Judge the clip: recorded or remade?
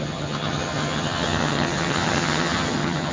remade